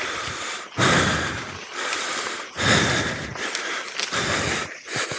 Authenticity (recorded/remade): recorded